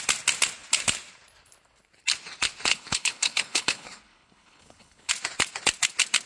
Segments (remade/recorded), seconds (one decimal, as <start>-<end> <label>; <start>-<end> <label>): 0.0-2.7 recorded; 2.7-5.1 remade; 5.1-6.3 recorded